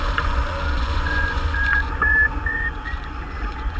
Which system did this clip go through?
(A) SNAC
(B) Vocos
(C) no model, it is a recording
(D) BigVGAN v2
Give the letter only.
B